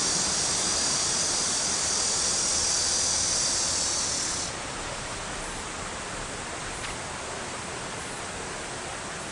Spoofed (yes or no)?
no